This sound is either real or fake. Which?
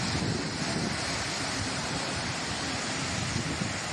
fake